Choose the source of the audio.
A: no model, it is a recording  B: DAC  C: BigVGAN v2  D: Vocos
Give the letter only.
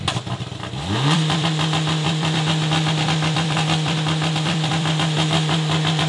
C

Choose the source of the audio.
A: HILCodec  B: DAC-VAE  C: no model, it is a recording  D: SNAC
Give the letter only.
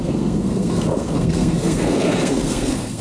D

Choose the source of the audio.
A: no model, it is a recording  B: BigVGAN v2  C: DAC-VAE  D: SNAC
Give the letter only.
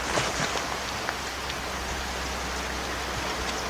A